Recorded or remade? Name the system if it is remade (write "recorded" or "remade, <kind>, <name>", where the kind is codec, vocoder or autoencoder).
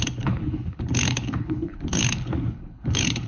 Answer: remade, codec, HILCodec